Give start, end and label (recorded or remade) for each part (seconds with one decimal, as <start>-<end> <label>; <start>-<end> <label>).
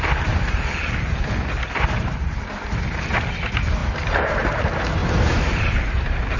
0.0-3.8 recorded; 3.8-4.6 remade; 4.6-5.0 recorded; 5.0-6.4 remade